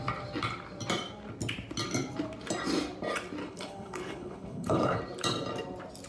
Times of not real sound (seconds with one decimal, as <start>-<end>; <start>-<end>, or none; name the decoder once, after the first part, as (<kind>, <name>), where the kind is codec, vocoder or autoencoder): 3.4-5.0 (codec, HILCodec)